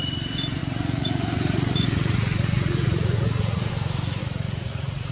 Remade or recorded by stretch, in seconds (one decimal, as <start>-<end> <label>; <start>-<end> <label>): 0.0-0.6 recorded; 0.6-3.7 remade; 3.7-4.2 recorded; 4.2-5.1 remade

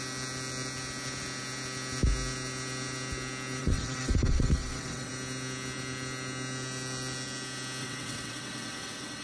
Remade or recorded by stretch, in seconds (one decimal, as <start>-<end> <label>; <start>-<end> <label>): 0.0-3.6 recorded; 3.6-5.1 remade; 5.1-7.8 recorded; 7.8-9.2 remade

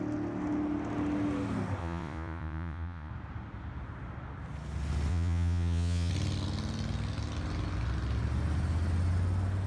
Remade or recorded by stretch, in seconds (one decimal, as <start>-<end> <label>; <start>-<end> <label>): 0.0-1.8 recorded; 1.8-3.1 remade; 3.1-5.1 recorded; 5.1-6.1 remade; 6.1-9.7 recorded

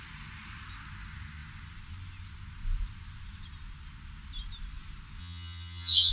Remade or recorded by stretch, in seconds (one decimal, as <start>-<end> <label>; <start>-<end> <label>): 0.0-5.2 recorded; 5.2-6.1 remade

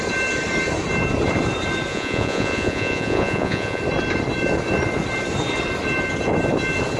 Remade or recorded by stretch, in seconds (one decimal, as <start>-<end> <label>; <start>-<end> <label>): 0.0-1.9 recorded; 1.9-3.8 remade; 3.8-7.0 recorded

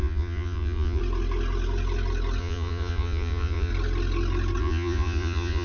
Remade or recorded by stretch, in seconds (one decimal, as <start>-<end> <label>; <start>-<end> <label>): 0.0-1.0 remade; 1.0-2.4 recorded; 2.4-3.7 remade; 3.7-4.6 recorded; 4.6-5.6 remade

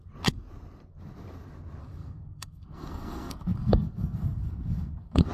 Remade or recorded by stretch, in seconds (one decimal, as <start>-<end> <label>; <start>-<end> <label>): 0.0-1.8 recorded; 1.8-5.3 remade